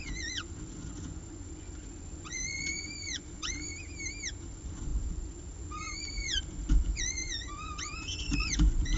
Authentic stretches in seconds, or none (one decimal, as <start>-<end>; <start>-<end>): 3.7-4.5

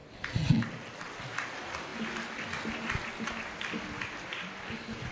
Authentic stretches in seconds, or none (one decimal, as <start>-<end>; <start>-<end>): 0.0-5.1

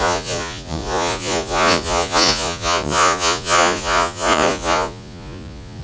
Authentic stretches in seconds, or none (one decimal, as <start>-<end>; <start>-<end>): none

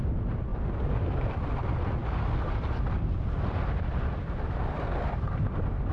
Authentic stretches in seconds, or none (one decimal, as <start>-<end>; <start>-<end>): 0.0-5.9